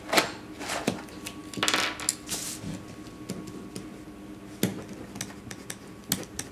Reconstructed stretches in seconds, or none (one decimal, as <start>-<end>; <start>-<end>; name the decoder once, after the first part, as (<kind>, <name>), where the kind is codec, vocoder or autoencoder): none